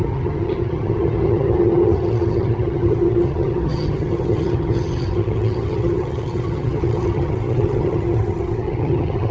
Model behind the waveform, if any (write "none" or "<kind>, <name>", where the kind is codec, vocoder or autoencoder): vocoder, HiFi-GAN